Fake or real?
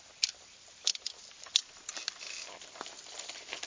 real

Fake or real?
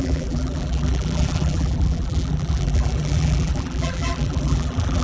fake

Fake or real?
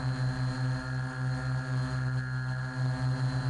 real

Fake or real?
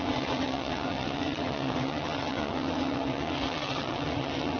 fake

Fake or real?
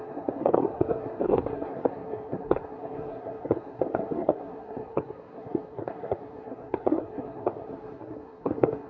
fake